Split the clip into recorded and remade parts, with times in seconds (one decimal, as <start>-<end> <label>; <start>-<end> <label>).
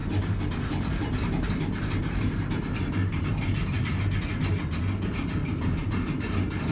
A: 0.0-4.0 remade; 4.0-6.7 recorded